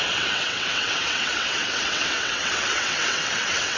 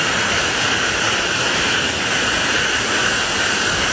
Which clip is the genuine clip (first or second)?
second